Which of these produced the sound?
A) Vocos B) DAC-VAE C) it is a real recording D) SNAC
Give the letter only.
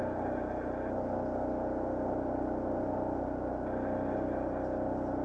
C